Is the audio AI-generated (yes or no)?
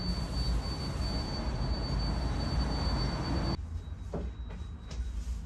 no